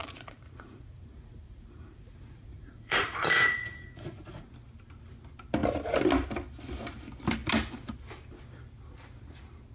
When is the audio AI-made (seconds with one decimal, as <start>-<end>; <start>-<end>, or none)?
0.0-4.5